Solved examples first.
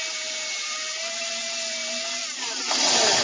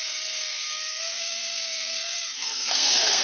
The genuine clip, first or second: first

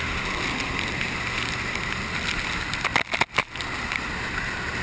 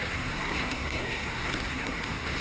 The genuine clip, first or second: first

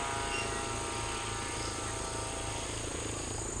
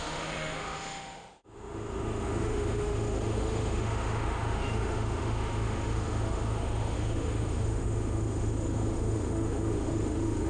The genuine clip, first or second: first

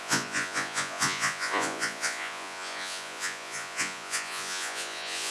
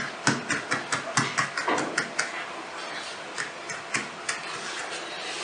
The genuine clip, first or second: second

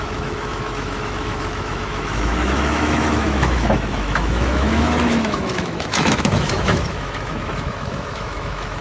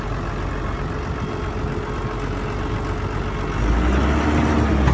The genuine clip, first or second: second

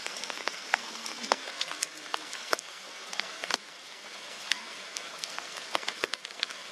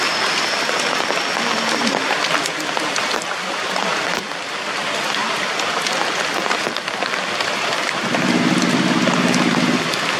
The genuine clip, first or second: second